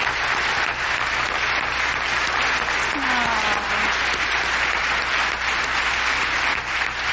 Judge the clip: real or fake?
real